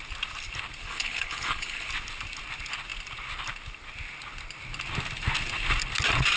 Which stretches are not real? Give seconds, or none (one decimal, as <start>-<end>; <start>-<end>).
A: 0.8-1.9